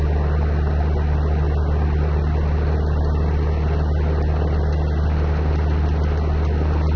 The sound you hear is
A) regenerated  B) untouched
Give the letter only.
B